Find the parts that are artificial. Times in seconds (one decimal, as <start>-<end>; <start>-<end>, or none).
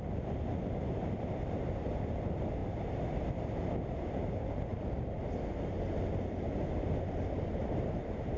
none